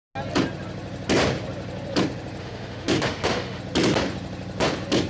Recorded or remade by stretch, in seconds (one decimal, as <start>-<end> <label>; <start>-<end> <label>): 0.0-2.4 recorded; 2.4-3.6 remade; 3.6-5.1 recorded